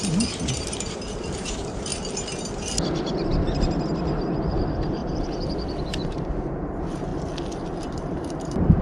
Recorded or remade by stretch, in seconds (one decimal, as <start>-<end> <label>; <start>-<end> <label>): 0.0-1.9 remade; 1.9-4.2 recorded; 4.2-5.0 remade; 5.0-5.8 recorded; 5.8-7.1 remade; 7.1-7.8 recorded; 7.8-8.8 remade